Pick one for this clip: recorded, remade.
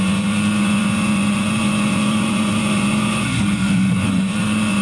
remade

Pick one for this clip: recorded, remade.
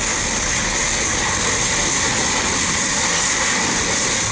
recorded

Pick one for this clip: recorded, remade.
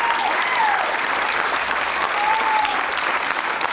recorded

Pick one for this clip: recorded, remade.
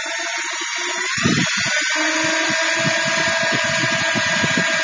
recorded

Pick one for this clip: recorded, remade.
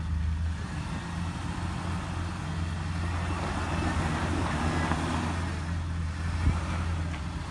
recorded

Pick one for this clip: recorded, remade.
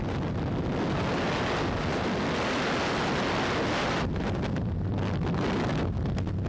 recorded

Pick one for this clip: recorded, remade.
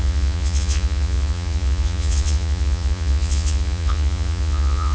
remade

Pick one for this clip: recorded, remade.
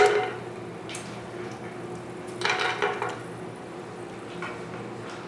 recorded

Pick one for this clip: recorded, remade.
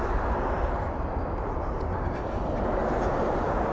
recorded